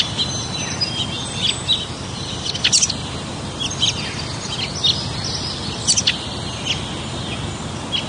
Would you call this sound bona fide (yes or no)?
yes